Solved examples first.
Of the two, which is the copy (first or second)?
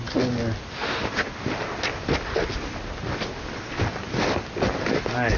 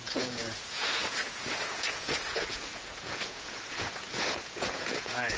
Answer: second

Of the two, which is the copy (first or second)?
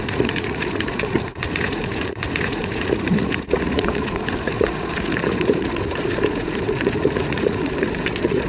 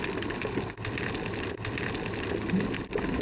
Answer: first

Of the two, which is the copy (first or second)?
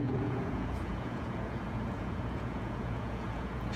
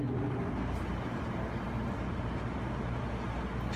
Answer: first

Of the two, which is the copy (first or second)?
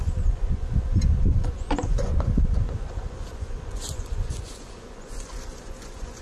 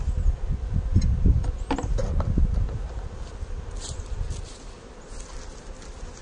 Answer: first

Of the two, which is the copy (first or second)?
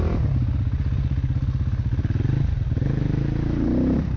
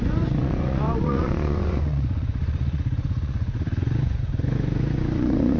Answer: second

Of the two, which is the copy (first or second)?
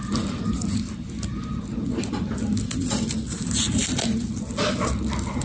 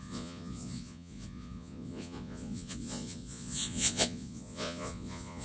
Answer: second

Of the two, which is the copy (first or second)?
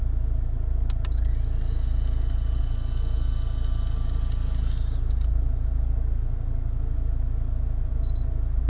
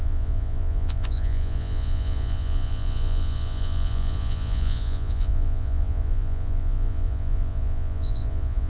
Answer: second